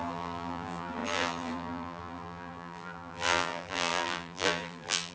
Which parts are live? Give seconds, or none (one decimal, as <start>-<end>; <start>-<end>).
none